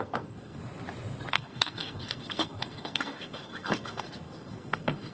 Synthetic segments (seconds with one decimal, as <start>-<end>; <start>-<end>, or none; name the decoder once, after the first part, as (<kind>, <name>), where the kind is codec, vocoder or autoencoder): 0.0-0.6 (codec, SNAC); 1.3-5.1